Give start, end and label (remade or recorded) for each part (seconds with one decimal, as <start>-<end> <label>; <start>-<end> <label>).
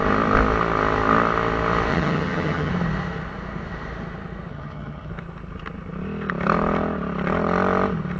0.0-1.9 recorded; 1.9-2.7 remade; 2.7-4.5 recorded; 4.5-5.1 remade; 5.1-8.2 recorded